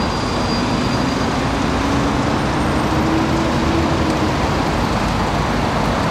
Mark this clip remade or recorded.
recorded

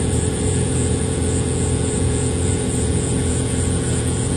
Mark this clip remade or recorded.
remade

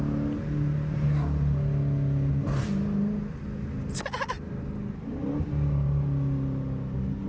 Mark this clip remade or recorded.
recorded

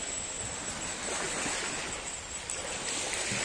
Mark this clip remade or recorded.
recorded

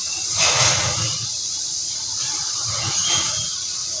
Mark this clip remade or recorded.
remade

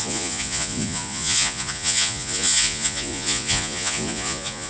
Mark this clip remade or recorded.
remade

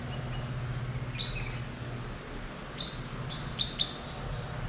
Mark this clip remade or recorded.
recorded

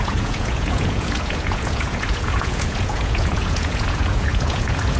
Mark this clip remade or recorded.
remade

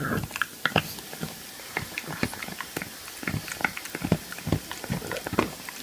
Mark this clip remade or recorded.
recorded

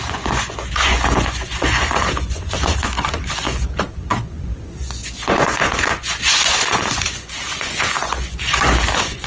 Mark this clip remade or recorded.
remade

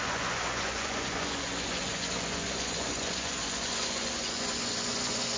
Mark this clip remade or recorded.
remade